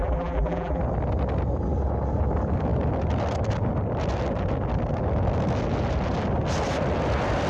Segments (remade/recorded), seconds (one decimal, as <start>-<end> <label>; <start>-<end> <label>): 0.0-0.8 remade; 0.8-7.5 recorded

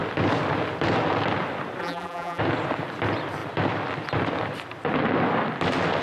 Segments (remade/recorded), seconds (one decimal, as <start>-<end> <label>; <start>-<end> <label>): 0.0-1.8 recorded; 1.8-2.4 remade; 2.4-6.0 recorded